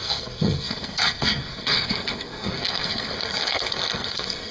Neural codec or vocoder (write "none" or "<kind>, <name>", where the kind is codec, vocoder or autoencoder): codec, SNAC